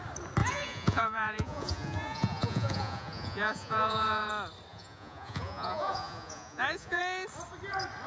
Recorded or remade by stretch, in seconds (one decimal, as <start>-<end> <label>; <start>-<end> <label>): 0.0-0.4 recorded; 0.4-4.3 remade; 4.3-4.7 recorded; 4.7-7.0 remade; 7.0-8.1 recorded